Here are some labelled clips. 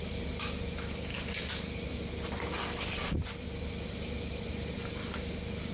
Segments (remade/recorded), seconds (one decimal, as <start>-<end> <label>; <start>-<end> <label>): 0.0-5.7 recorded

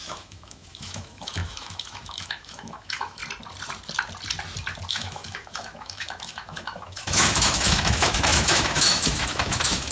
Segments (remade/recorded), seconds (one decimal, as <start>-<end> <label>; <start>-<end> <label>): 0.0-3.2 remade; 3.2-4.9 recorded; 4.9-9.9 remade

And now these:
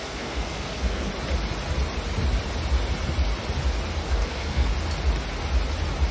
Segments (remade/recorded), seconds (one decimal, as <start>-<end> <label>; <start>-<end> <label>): 0.0-1.1 remade; 1.1-4.1 recorded; 4.1-4.7 remade; 4.7-6.1 recorded